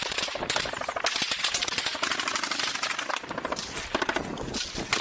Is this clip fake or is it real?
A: real